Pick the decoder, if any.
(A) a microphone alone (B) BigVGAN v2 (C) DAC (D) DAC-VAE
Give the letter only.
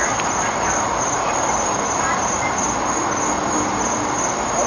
A